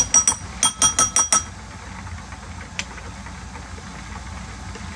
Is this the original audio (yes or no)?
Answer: yes